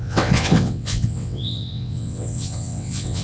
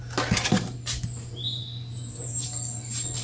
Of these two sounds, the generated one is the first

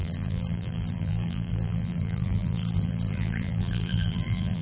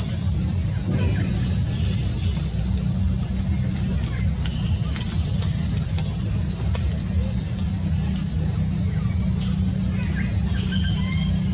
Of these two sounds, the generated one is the first